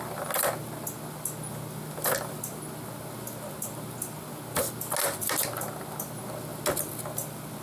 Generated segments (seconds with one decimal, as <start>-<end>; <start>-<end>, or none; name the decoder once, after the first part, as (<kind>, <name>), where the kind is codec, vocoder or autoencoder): none